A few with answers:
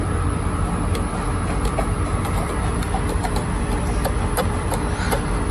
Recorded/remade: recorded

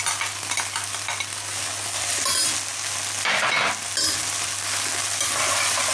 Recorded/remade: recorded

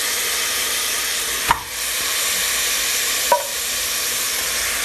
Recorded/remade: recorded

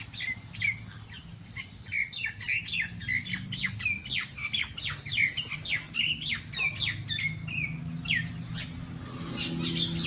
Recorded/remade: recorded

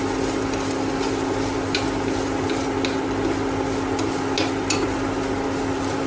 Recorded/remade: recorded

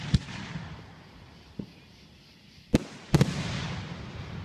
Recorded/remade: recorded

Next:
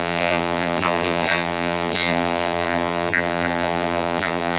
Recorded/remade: remade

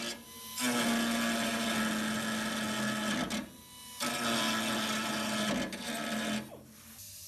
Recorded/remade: recorded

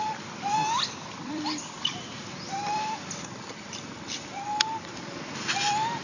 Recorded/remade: remade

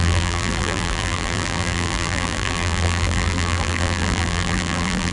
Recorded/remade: remade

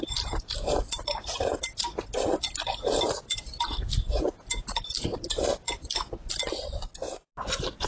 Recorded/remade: recorded